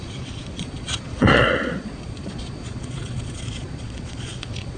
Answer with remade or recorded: remade